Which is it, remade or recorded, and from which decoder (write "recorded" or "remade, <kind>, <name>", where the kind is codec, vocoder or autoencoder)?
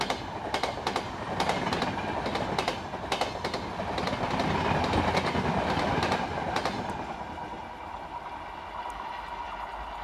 recorded